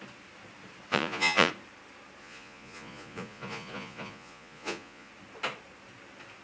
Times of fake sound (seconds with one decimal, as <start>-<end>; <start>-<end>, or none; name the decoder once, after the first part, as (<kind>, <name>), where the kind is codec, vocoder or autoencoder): 0.9-1.5 (vocoder, Vocos); 2.2-5.1